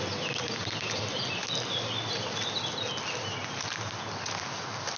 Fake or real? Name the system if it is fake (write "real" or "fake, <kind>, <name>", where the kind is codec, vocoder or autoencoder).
real